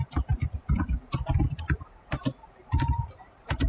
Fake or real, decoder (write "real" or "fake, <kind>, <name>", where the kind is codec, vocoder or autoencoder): fake, vocoder, BigVGAN v2